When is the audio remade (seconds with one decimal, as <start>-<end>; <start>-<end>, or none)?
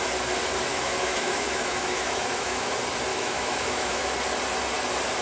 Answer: 0.7-2.7; 3.1-4.0